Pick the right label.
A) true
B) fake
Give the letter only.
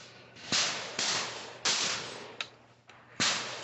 A